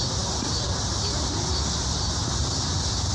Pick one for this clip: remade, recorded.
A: recorded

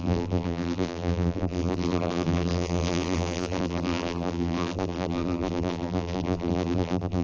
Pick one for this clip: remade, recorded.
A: remade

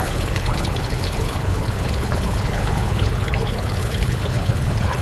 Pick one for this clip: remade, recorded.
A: remade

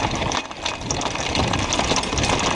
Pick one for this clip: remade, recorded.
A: recorded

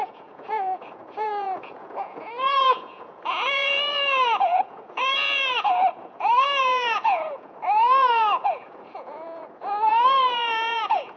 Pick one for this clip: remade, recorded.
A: remade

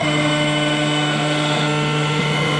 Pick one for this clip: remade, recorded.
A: remade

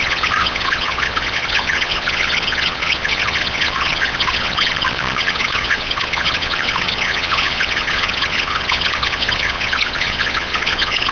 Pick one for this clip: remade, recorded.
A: remade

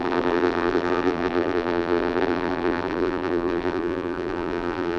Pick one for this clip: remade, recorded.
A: remade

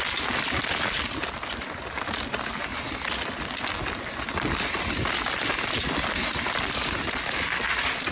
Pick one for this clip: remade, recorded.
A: recorded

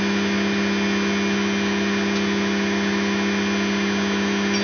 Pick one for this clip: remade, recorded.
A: recorded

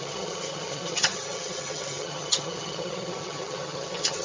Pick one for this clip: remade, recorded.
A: remade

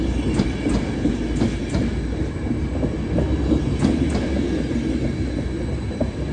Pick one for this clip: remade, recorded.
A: recorded